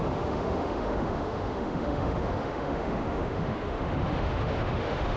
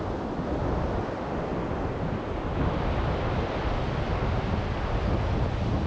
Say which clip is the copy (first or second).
first